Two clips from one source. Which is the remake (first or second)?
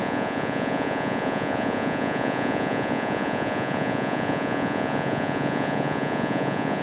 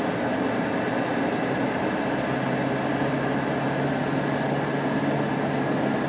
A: first